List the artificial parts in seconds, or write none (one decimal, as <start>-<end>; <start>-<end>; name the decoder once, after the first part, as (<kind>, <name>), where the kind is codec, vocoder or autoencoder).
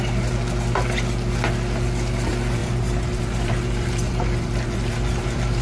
2.6-5.6 (vocoder, BigVGAN v2)